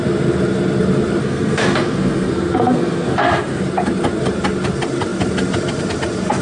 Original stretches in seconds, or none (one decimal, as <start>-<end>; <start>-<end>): 0.0-1.2; 3.6-6.4